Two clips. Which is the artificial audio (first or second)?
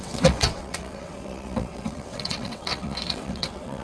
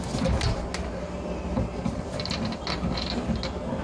first